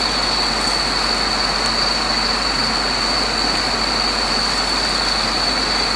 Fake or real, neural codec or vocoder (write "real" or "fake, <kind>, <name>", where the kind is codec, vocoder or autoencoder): real